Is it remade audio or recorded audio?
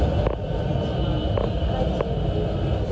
recorded